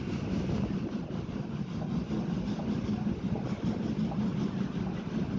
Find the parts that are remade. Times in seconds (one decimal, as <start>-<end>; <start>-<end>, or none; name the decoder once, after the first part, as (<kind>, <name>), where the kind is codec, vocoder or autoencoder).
none